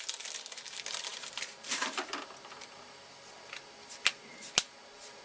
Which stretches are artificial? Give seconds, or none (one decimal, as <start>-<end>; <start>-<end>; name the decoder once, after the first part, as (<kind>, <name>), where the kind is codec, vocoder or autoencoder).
1.1-4.2 (vocoder, BigVGAN v2)

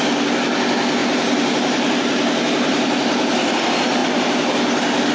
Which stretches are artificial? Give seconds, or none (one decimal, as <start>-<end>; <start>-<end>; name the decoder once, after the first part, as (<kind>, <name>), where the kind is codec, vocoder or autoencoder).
1.0-3.6 (vocoder, BigVGAN v2)

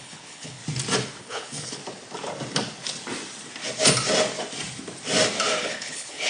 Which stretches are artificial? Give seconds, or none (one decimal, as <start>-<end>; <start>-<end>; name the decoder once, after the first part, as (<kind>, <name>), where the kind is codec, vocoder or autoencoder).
0.0-0.6 (codec, HILCodec); 1.2-1.8; 5.6-6.3